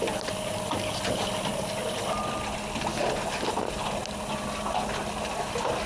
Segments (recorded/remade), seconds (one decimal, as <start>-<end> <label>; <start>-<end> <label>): 0.0-5.9 recorded